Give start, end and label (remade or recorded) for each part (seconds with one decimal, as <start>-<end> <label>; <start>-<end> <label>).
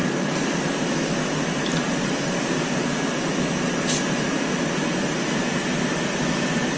0.0-6.8 recorded